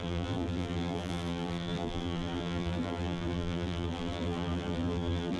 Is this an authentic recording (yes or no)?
no